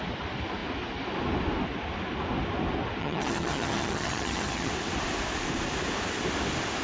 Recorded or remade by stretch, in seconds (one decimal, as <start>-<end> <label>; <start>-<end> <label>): 0.0-3.0 recorded; 3.0-4.7 remade; 4.7-6.8 recorded